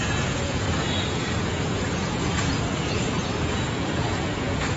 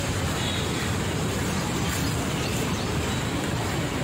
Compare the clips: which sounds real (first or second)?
second